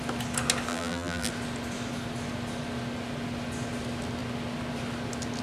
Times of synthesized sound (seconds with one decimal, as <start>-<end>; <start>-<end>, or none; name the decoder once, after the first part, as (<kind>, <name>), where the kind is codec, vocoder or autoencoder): 0.7-1.3 (vocoder, BigVGAN v2)